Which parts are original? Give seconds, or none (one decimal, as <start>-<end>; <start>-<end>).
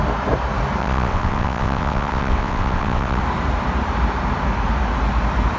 0.0-0.8; 3.2-5.6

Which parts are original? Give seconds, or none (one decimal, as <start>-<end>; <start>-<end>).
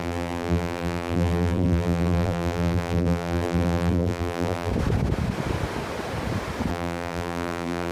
4.7-6.7